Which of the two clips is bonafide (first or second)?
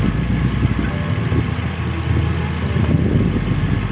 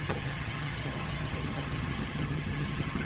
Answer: first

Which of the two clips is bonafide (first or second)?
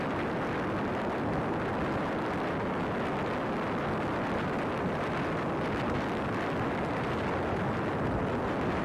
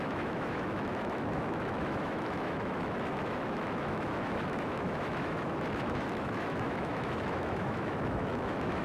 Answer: first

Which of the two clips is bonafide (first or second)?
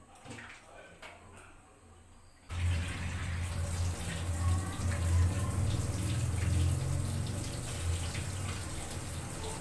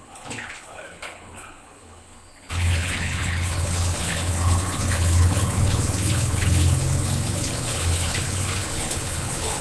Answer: first